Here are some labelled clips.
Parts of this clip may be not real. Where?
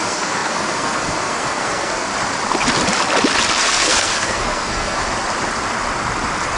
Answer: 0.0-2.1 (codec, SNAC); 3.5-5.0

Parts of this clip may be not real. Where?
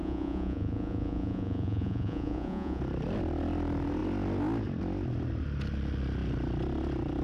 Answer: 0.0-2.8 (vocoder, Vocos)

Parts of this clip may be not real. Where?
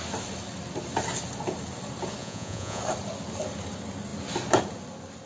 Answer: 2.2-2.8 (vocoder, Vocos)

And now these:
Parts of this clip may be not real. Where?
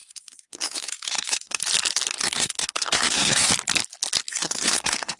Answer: 0.0-1.6 (codec, SNAC); 2.2-3.5; 4.3-5.2